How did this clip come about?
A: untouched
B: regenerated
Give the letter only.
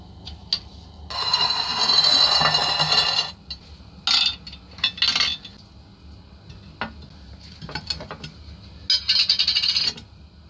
A